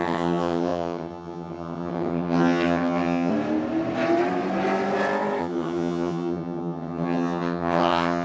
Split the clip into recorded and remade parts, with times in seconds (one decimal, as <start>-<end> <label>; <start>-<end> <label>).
0.0-3.3 remade; 3.3-5.4 recorded; 5.4-8.2 remade